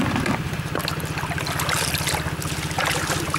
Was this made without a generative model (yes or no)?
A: yes